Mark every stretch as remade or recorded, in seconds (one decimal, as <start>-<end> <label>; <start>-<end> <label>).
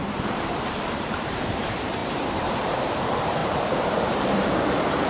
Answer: 0.0-5.1 remade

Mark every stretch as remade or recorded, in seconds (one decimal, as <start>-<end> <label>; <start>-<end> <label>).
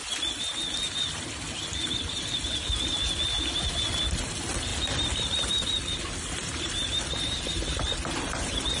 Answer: 0.0-4.7 recorded; 4.7-7.8 remade; 7.8-8.8 recorded